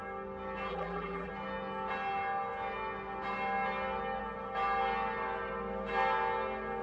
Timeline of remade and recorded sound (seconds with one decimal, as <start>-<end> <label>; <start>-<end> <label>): 0.0-0.7 recorded; 0.7-1.3 remade; 1.3-6.8 recorded